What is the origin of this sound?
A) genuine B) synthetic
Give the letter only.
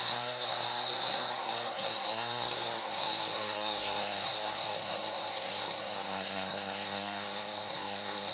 B